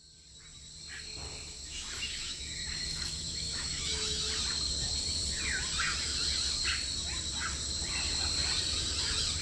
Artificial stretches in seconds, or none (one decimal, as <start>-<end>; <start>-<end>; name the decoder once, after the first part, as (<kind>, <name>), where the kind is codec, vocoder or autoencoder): 1.2-4.3 (autoencoder, DAC-VAE)